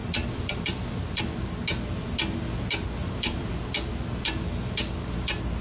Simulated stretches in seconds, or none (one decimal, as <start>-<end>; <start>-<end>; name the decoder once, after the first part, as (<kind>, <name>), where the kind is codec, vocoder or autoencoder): 0.0-1.2 (vocoder, BigVGAN v2); 3.0-3.5

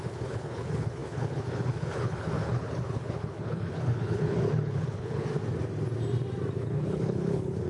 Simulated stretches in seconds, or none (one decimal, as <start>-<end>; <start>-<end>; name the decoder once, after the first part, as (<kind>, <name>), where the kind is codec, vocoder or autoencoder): 0.0-5.3 (codec, HILCodec); 6.6-7.7

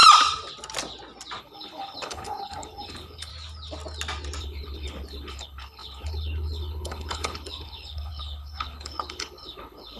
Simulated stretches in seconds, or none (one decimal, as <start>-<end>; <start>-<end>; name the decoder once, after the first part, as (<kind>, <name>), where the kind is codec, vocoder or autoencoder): 1.4-3.3 (codec, HILCodec); 4.4-10.0

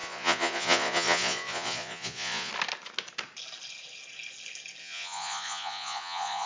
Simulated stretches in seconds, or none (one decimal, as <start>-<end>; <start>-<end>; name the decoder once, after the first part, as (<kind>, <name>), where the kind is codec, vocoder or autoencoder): 0.0-2.5 (vocoder, Vocos); 4.8-6.5

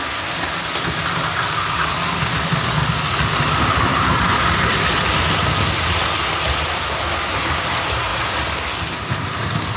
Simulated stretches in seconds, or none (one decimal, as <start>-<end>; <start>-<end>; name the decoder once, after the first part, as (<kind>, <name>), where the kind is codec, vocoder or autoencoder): none

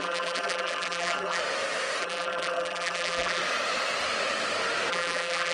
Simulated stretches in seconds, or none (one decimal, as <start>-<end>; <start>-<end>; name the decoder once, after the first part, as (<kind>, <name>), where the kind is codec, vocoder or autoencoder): 0.0-1.4 (vocoder, BigVGAN v2); 2.0-3.4; 4.9-5.5